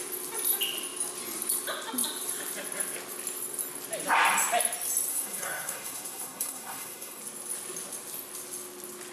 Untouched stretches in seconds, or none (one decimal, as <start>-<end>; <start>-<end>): 0.0-5.1; 7.2-9.1

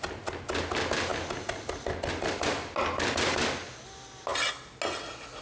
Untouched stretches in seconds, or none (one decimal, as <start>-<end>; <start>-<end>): 0.0-5.4

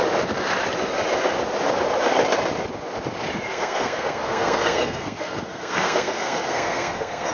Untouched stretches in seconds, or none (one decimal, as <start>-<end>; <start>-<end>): 0.0-3.5

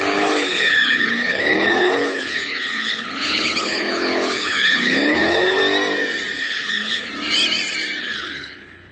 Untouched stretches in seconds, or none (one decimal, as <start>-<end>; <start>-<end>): 5.6-6.4; 7.1-8.0

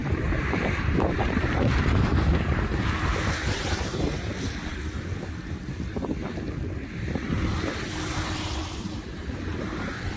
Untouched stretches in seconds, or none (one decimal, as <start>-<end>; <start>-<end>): 4.2-10.2

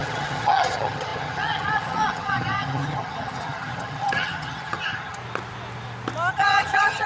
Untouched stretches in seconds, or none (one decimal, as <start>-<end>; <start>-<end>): 5.2-6.3

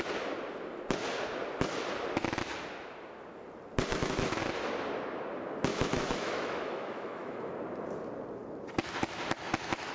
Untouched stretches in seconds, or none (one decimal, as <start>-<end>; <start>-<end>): 0.0-3.9; 4.4-5.7; 7.5-9.9

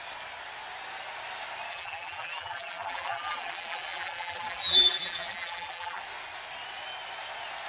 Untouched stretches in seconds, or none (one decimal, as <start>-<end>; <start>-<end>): 0.0-1.7; 6.0-7.7